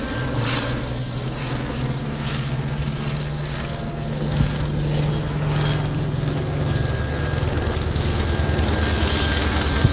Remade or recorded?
recorded